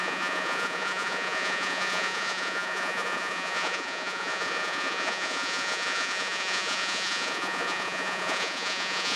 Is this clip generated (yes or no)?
yes